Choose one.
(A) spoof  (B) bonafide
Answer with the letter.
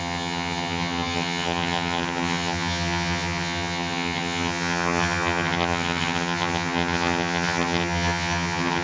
A